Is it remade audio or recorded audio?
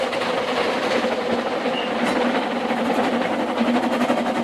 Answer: recorded